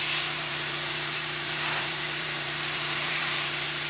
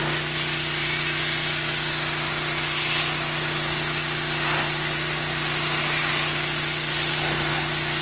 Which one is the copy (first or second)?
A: first